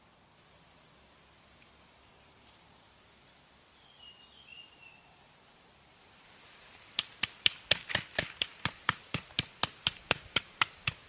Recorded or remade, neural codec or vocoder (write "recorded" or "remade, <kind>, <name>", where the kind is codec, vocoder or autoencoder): remade, vocoder, BigVGAN v2